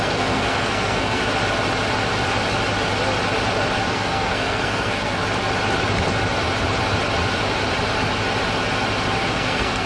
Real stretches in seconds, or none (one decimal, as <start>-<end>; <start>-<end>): 1.2-3.9; 5.2-9.3